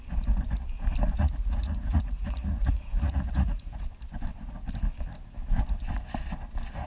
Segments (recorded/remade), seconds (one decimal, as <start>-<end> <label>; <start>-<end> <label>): 0.0-1.2 recorded; 1.2-3.8 remade; 3.8-6.9 recorded